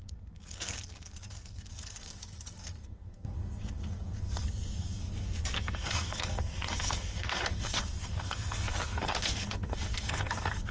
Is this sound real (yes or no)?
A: no